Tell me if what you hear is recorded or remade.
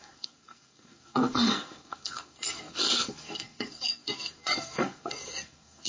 remade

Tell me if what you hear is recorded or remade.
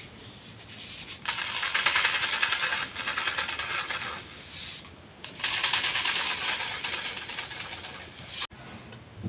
recorded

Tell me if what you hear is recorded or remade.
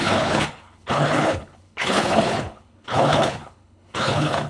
remade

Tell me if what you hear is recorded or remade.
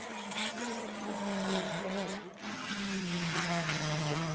remade